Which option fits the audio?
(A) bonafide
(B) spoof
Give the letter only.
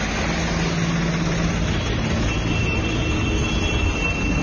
A